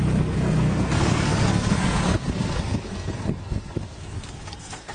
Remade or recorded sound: remade